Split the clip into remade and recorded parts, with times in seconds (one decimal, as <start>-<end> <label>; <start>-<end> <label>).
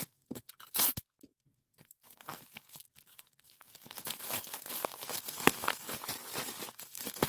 0.0-6.0 remade; 6.0-6.7 recorded; 6.7-7.3 remade